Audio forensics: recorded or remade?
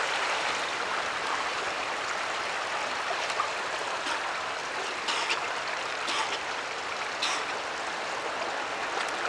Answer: recorded